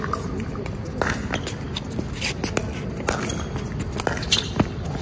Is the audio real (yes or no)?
yes